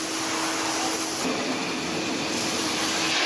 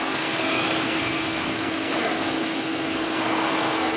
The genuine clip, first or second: first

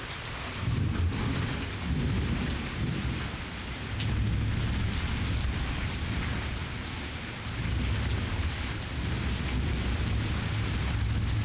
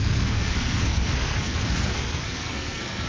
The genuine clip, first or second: first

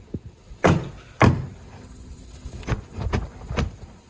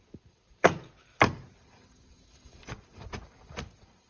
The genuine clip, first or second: first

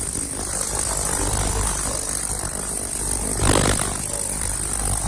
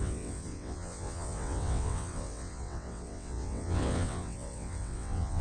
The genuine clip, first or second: first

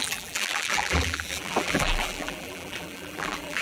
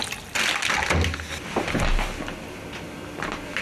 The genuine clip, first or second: second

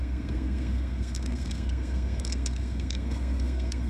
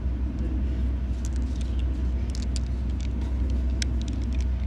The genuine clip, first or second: second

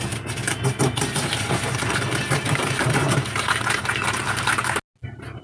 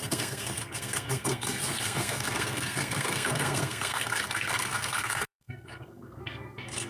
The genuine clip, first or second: first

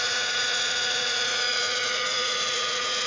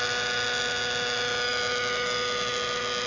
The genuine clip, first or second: second